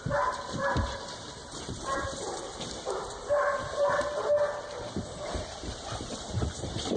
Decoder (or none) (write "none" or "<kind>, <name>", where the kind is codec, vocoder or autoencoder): vocoder, BigVGAN v2